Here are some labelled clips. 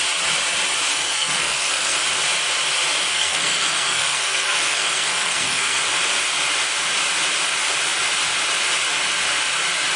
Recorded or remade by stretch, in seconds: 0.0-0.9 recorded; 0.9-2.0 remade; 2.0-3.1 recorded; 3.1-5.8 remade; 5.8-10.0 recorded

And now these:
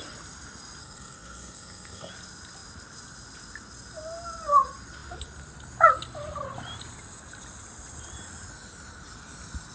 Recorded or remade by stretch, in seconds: 0.0-0.8 recorded; 0.8-2.1 remade; 2.1-9.7 recorded

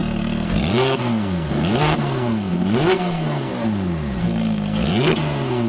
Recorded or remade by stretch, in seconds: 0.0-3.5 remade; 3.5-4.2 recorded; 4.2-5.7 remade